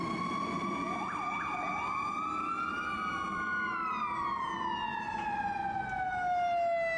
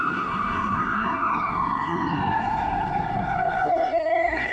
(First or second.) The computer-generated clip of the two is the second